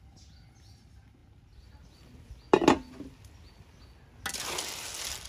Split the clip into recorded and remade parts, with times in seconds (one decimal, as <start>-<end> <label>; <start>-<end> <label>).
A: 0.0-5.3 recorded